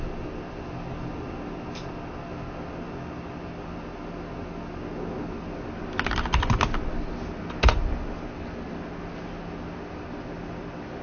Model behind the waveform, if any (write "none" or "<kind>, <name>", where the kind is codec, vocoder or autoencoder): none